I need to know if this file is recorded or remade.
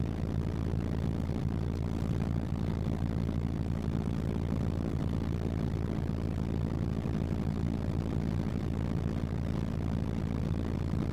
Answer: recorded